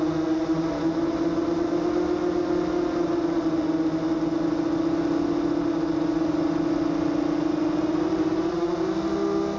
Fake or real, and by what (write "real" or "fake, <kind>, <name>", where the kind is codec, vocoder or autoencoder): real